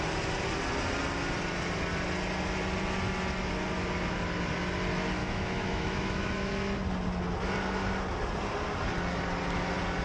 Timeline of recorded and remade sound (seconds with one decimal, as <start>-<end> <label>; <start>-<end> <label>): 0.0-5.2 recorded; 5.2-6.5 remade; 6.5-10.0 recorded